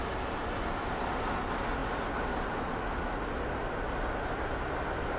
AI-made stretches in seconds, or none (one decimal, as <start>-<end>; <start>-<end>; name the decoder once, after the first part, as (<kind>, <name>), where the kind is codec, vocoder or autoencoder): none